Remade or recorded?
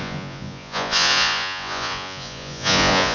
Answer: remade